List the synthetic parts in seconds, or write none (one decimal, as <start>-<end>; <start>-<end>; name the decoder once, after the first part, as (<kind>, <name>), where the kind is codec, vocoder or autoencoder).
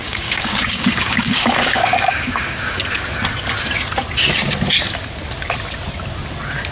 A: 0.0-2.8 (codec, DAC)